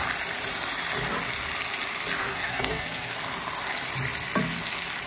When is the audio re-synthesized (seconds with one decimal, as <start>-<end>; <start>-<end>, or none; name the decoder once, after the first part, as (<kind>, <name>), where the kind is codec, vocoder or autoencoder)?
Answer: 2.2-3.1 (codec, SNAC)